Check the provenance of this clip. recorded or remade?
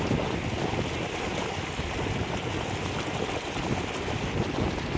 recorded